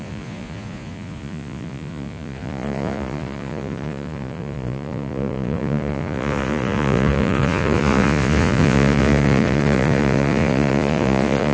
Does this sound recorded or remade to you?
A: remade